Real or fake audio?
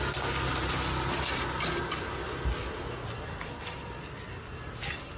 real